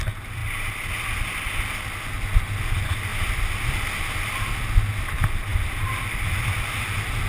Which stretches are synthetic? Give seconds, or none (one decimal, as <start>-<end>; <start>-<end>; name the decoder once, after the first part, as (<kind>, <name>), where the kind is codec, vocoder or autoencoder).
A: 3.1-4.0 (vocoder, BigVGAN v2); 5.5-7.3